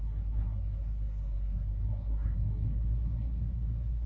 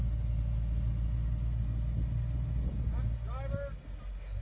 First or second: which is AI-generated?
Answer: first